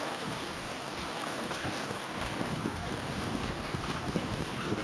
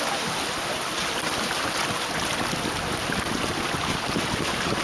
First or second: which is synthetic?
first